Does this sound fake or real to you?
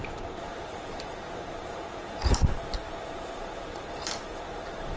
fake